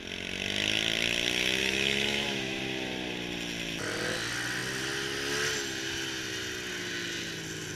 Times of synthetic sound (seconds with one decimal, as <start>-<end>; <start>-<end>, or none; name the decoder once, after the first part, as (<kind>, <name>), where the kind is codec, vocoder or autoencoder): 1.6-2.6 (autoencoder, DAC-VAE)